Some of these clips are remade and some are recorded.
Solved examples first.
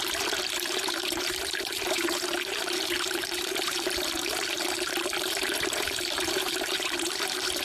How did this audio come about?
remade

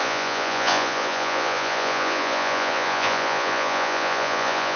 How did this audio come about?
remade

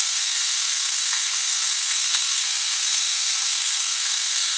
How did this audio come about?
remade